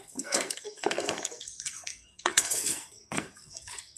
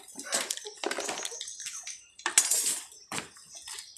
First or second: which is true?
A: second